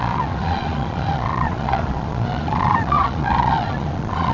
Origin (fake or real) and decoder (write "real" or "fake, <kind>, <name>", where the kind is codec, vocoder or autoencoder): fake, vocoder, Vocos